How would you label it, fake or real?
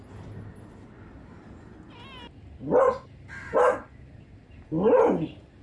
real